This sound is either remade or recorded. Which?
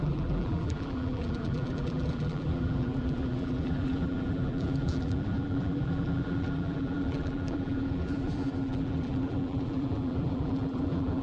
remade